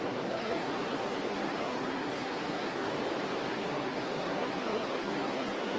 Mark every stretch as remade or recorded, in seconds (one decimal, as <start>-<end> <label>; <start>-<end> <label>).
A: 0.0-2.9 remade; 2.9-3.5 recorded; 3.5-5.8 remade